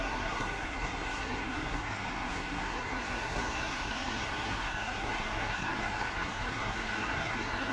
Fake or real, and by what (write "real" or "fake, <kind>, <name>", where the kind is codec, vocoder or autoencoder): fake, codec, SNAC